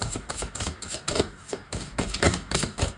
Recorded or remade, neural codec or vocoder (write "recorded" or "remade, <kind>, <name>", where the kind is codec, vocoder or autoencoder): remade, codec, DAC